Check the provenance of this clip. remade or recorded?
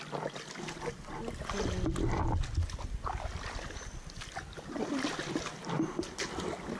recorded